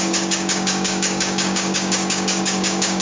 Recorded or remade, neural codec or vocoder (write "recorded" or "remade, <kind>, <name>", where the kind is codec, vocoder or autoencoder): remade, codec, DAC